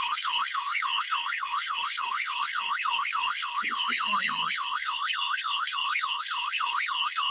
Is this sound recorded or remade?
remade